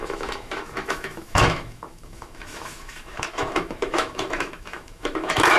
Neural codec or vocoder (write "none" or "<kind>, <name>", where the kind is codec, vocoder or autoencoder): autoencoder, DAC-VAE